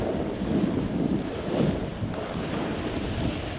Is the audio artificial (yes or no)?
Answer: no